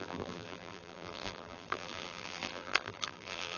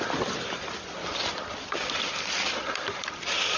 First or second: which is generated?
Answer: first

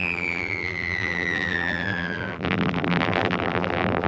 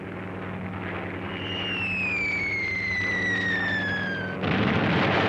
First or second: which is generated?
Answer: first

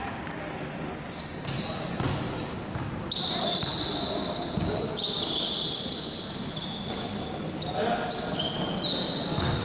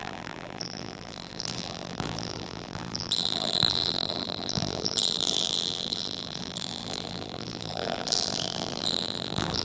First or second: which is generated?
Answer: second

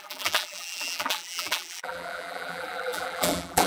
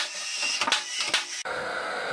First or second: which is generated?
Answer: first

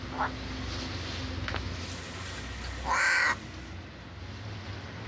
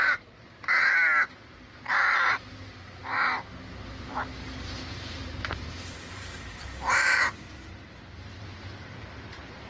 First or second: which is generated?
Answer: second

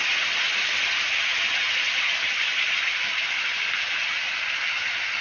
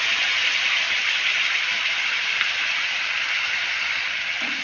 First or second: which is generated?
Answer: second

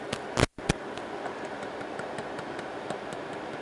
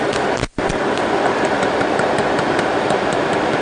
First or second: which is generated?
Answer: second